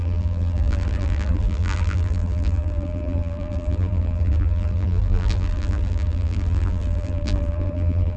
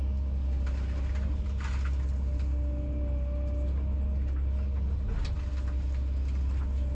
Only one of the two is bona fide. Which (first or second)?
second